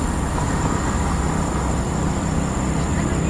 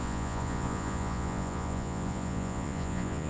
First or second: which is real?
first